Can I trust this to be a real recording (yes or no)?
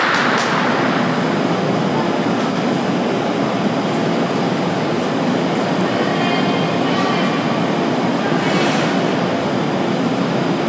yes